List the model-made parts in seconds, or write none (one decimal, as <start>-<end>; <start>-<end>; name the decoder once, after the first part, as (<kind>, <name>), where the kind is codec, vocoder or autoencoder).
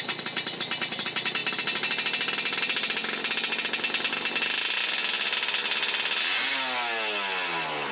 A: none